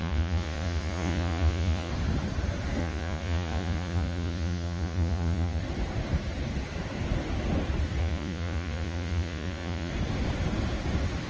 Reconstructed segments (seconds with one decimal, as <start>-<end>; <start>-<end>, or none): 0.0-1.9; 2.8-5.6; 8.0-9.9